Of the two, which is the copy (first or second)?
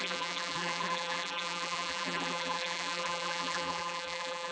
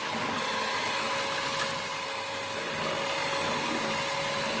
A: first